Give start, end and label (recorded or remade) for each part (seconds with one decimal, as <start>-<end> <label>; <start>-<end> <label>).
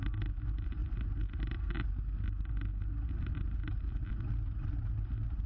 0.0-5.5 recorded